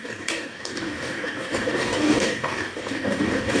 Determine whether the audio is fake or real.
fake